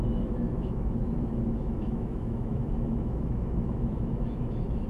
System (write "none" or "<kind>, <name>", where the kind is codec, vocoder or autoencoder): autoencoder, DAC-VAE